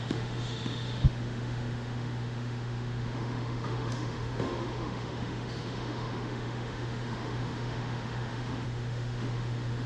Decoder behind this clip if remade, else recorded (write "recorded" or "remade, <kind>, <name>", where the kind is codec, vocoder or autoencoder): remade, autoencoder, DAC-VAE